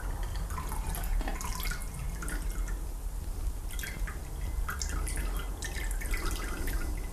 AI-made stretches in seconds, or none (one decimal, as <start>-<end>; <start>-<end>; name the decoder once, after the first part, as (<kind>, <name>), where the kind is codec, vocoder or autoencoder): none